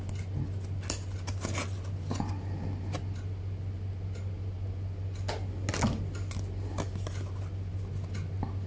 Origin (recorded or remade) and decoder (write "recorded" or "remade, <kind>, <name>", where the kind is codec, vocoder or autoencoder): recorded